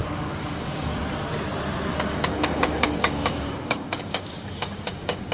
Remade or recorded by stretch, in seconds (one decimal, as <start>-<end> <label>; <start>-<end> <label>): 0.0-1.0 remade; 1.0-1.9 recorded; 1.9-5.3 remade